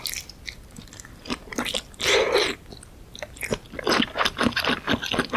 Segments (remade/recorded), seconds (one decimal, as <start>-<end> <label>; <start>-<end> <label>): 0.0-5.4 recorded